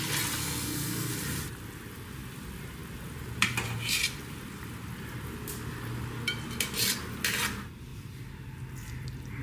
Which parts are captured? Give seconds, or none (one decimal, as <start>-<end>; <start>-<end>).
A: 0.0-0.4; 1.1-9.4